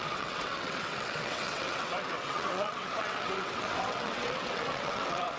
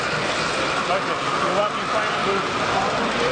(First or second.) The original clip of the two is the second